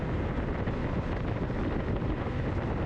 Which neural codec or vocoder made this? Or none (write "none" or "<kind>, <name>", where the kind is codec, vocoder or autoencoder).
none